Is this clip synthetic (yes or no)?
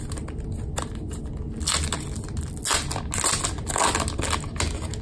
no